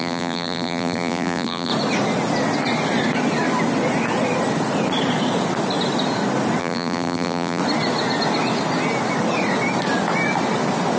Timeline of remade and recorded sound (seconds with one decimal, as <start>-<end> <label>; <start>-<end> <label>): 0.0-1.7 remade; 1.7-6.6 recorded; 6.6-7.6 remade; 7.6-11.0 recorded